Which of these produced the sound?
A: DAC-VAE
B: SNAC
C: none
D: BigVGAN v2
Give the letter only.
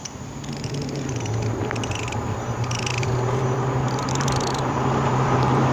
D